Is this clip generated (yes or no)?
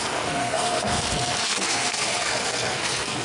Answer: yes